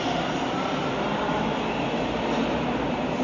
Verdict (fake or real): real